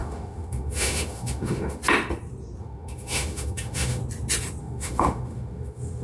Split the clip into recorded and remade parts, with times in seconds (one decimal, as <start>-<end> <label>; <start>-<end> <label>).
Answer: 0.0-1.8 remade; 1.8-2.6 recorded; 2.6-4.0 remade; 4.0-4.6 recorded; 4.6-6.0 remade